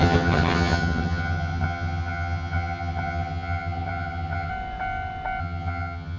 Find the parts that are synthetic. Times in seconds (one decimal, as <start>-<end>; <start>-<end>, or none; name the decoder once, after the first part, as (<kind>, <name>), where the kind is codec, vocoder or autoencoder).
0.0-4.5 (vocoder, HiFi-GAN); 5.4-6.2

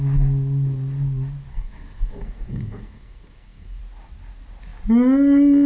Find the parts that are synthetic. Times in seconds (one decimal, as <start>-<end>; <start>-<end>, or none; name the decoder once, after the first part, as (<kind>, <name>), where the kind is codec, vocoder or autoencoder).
1.5-3.8 (codec, SNAC)

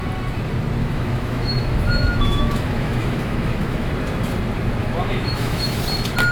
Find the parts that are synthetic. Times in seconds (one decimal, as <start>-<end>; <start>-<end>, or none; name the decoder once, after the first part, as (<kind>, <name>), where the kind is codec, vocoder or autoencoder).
0.8-3.9 (autoencoder, DAC-VAE); 4.8-5.8

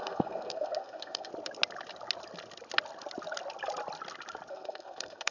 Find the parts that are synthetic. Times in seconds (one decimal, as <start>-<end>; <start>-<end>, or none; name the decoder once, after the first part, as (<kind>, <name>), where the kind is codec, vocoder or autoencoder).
0.0-1.3 (codec, SNAC); 4.5-5.3

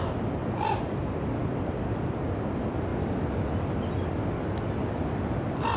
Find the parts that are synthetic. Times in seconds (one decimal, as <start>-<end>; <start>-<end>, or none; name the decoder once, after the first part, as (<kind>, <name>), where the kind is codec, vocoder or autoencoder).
none

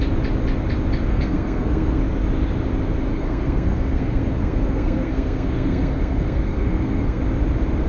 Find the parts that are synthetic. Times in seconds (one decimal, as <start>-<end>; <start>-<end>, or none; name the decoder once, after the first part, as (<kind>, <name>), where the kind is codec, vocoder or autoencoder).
1.1-2.0 (codec, SNAC); 3.1-7.2